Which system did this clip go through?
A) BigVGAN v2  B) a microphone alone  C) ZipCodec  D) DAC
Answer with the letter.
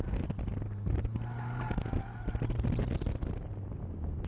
B